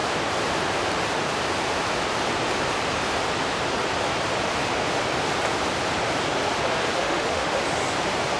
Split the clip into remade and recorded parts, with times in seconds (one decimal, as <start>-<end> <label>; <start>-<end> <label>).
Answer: 0.0-7.0 recorded; 7.0-7.6 remade; 7.6-8.4 recorded